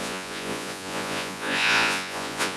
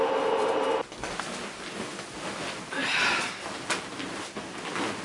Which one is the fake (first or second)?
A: first